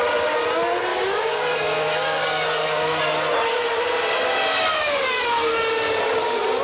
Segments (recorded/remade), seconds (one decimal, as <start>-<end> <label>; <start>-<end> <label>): 0.0-0.9 recorded; 0.9-3.0 remade; 3.0-4.7 recorded; 4.7-6.0 remade; 6.0-6.6 recorded